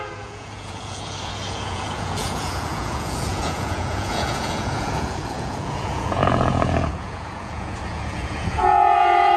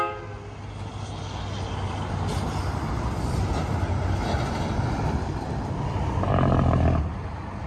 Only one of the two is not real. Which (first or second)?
first